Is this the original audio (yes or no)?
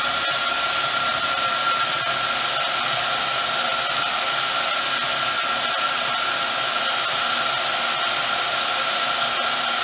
yes